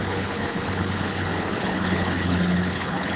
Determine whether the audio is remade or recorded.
remade